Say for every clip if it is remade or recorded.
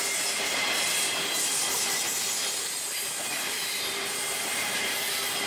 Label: recorded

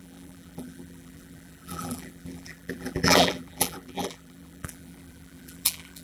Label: remade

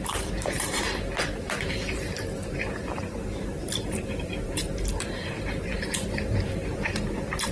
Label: remade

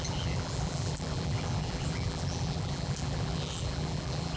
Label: remade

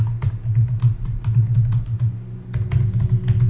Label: recorded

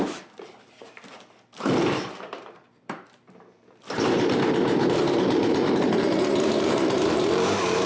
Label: remade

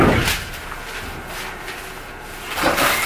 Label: recorded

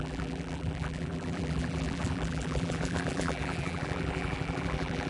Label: remade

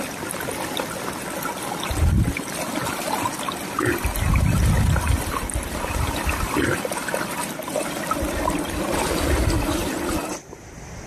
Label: recorded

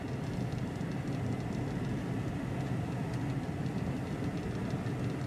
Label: recorded